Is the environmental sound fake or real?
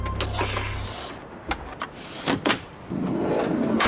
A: real